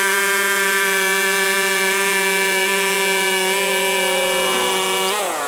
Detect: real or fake fake